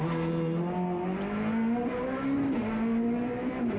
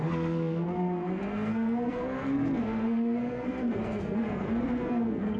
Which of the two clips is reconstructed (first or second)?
second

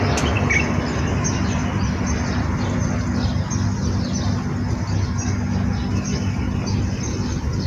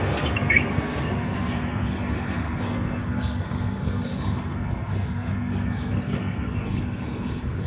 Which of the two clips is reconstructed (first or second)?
second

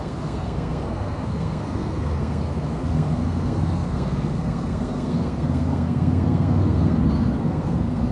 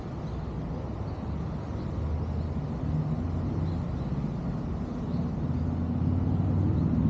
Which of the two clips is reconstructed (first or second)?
first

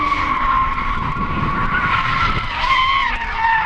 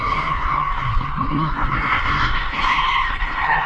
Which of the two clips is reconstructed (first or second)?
second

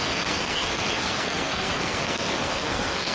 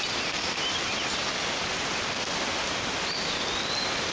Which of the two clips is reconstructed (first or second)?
first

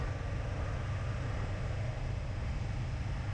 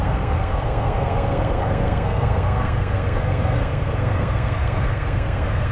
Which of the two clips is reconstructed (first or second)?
second